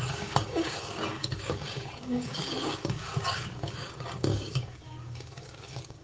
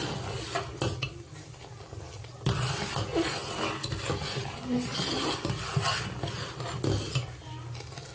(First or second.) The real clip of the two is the second